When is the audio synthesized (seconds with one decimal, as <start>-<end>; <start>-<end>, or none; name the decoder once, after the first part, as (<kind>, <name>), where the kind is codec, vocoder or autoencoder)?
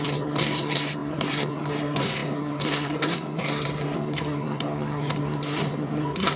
0.0-6.4 (codec, SNAC)